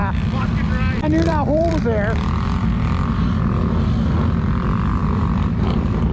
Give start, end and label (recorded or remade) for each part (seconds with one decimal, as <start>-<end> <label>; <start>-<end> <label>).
0.0-1.8 remade; 1.8-6.1 recorded